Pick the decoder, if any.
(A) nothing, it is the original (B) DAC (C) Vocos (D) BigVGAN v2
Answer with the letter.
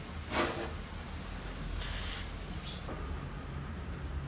A